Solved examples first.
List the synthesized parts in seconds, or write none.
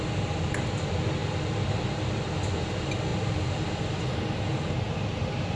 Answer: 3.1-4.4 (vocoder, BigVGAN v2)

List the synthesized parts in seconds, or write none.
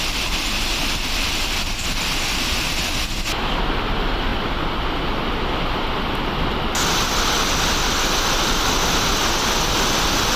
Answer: none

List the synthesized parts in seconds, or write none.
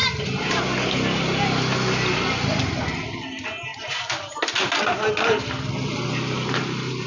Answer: 0.0-0.6 (vocoder, BigVGAN v2); 3.7-4.4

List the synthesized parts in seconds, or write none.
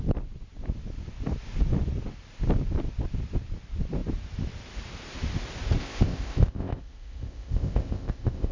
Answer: 5.8-8.5 (codec, ZipCodec)